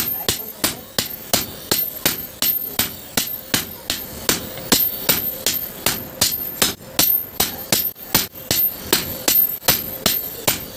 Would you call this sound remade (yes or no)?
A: no